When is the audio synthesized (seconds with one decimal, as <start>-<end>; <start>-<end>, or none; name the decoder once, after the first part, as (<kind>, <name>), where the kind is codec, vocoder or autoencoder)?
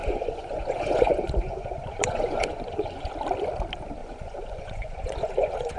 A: 0.0-3.1 (vocoder, Vocos); 4.0-5.8